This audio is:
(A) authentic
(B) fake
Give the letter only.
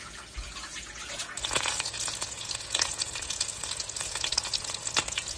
B